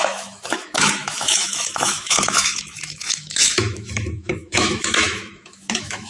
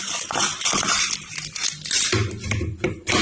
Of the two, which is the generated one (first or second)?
first